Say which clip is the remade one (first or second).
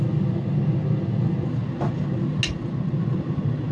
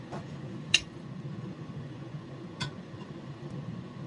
second